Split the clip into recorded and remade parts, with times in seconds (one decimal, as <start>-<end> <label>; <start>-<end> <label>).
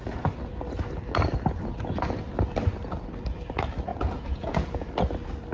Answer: 0.0-3.9 recorded; 3.9-4.9 remade; 4.9-5.5 recorded